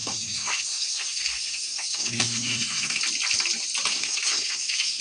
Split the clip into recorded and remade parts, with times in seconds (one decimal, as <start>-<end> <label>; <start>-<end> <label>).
0.0-3.0 remade; 3.0-3.9 recorded; 3.9-5.0 remade